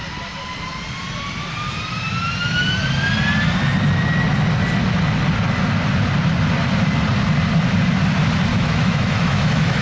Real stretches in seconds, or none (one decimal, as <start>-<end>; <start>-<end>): 0.0-8.5